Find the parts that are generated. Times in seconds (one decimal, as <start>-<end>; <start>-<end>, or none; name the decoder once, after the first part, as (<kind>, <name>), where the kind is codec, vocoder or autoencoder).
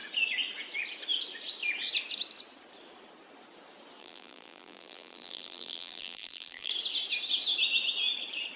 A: 4.0-6.7 (vocoder, BigVGAN v2)